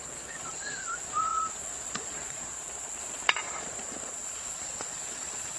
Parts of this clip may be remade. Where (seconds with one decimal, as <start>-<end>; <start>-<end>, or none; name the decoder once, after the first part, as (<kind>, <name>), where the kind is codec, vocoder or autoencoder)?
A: 0.0-5.6 (vocoder, Vocos)